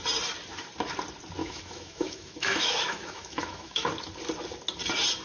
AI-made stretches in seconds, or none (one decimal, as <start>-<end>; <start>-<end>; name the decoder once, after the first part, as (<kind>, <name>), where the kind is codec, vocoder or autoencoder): 1.4-3.9 (autoencoder, DAC-VAE)